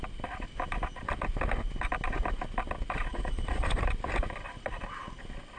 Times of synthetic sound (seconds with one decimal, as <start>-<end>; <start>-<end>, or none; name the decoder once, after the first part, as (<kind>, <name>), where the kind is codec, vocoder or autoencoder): 3.1-3.8 (vocoder, Vocos)

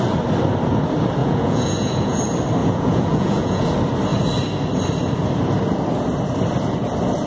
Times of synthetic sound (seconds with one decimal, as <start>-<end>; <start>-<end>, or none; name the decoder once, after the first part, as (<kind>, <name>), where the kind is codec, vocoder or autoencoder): 1.2-2.2 (vocoder, Vocos); 2.6-3.6

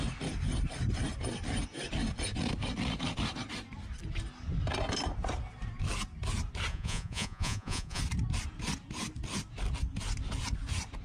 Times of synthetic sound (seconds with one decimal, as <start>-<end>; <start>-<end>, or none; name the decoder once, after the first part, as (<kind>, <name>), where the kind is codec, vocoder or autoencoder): 6.7-8.0 (vocoder, Vocos)

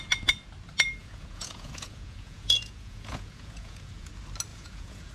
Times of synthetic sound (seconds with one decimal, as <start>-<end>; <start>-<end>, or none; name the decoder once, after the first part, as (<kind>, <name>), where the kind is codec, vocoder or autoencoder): 1.0-4.1 (vocoder, Vocos); 4.5-5.1

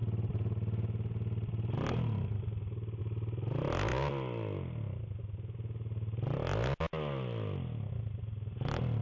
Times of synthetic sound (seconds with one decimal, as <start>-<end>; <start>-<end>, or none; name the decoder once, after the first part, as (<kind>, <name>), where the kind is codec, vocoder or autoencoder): none